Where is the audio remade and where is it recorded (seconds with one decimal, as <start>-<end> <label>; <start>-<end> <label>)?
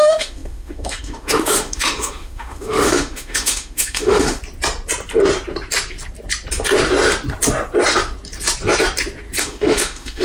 0.0-4.4 remade; 4.4-9.4 recorded; 9.4-10.2 remade